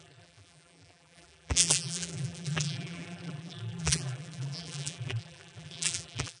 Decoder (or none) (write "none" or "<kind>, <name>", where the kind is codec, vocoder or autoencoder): vocoder, BigVGAN v2